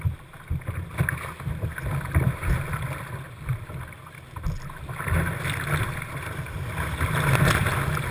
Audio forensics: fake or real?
real